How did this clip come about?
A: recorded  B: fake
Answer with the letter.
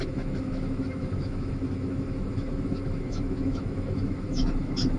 B